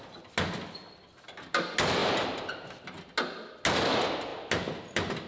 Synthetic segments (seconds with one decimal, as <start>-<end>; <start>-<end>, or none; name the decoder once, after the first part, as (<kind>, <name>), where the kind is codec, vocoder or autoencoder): none

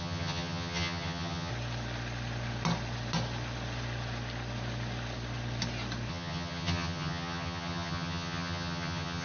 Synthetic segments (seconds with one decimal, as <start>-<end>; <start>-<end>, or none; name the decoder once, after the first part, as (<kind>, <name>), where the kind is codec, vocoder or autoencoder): 0.0-1.5 (vocoder, HiFi-GAN); 6.1-9.2

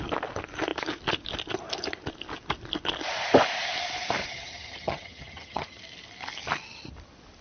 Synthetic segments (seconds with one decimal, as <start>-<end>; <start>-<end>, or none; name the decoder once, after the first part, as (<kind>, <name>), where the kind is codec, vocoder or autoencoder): 4.2-5.8 (vocoder, HiFi-GAN)

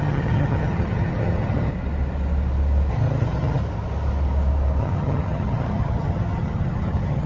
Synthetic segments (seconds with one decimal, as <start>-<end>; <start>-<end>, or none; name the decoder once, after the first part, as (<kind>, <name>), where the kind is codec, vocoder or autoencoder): 0.0-1.7 (vocoder, HiFi-GAN); 2.9-3.6; 4.8-7.3

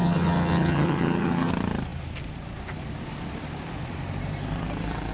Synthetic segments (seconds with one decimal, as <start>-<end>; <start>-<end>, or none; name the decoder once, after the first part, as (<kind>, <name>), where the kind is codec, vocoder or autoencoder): 0.0-1.5 (vocoder, HiFi-GAN)

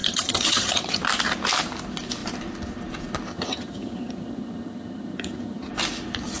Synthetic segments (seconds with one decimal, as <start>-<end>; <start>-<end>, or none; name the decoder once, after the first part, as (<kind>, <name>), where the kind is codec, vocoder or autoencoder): 0.0-1.0 (vocoder, HiFi-GAN); 3.3-5.7

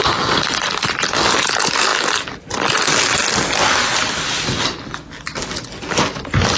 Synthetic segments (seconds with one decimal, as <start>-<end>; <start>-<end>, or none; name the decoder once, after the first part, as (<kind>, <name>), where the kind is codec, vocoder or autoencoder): none